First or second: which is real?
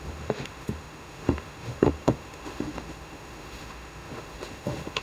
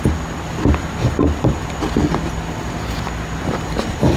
second